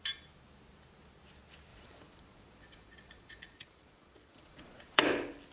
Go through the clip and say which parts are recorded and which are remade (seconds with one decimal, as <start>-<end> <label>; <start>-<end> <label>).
0.0-1.7 recorded; 1.7-5.0 remade; 5.0-5.5 recorded